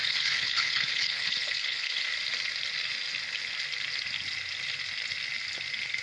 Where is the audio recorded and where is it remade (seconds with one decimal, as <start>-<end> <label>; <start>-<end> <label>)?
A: 0.0-2.0 remade; 2.0-6.0 recorded